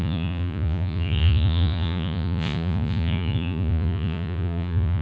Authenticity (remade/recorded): remade